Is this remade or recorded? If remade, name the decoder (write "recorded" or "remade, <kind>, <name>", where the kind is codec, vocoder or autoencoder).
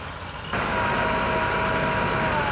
recorded